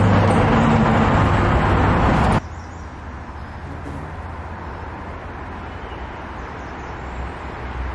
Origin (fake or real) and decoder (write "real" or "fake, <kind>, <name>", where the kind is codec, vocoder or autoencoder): real